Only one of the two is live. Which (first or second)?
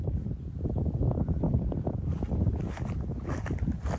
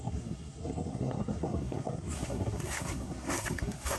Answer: first